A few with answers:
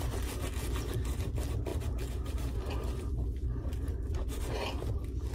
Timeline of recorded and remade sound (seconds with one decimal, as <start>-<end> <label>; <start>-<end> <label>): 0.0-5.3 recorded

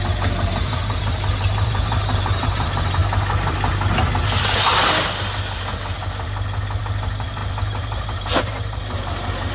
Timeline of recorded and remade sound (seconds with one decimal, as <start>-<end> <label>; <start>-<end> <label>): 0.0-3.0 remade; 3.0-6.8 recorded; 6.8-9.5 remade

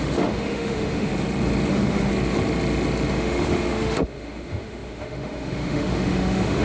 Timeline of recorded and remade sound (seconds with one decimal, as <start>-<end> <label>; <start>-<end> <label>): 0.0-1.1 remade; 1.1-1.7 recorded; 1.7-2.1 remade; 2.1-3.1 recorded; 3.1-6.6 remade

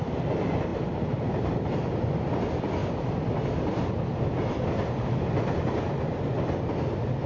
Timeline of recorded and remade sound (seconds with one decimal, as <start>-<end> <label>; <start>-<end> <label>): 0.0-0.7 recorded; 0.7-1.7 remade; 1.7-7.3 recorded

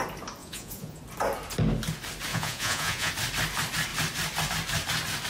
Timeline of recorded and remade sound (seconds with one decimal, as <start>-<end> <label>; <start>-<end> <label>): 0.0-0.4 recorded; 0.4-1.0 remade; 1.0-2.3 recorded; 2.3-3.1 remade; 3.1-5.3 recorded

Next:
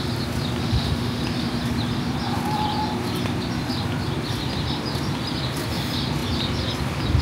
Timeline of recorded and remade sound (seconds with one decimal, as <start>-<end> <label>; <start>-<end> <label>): 0.0-0.6 recorded; 0.6-1.2 remade; 1.2-7.2 recorded

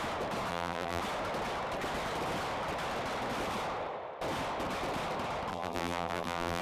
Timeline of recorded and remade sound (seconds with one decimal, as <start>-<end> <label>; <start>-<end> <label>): 0.0-0.5 recorded; 0.5-1.0 remade; 1.0-5.5 recorded; 5.5-6.6 remade